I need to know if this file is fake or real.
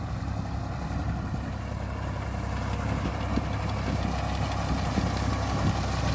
real